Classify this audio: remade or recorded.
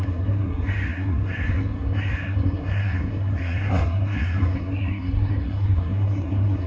remade